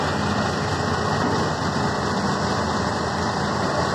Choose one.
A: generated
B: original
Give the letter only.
B